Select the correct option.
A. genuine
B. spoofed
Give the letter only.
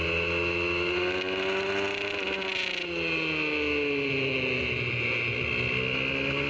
A